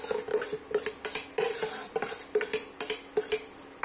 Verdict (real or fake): real